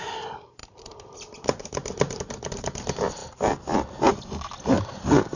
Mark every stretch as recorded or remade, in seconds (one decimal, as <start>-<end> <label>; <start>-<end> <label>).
0.0-5.4 recorded